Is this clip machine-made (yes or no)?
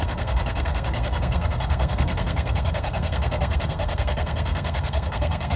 yes